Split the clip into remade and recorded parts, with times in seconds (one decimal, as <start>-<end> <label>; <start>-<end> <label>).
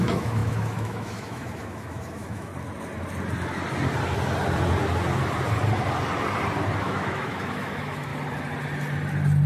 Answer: 0.0-2.5 remade; 2.5-6.8 recorded; 6.8-8.1 remade; 8.1-9.5 recorded